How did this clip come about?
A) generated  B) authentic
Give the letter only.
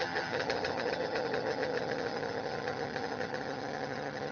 A